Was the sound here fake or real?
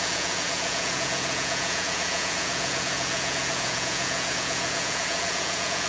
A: fake